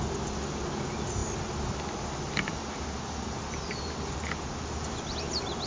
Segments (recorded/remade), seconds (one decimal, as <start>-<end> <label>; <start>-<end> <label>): 0.0-5.7 recorded